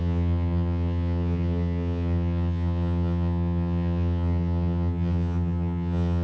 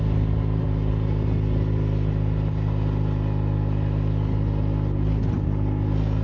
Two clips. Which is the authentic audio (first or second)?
second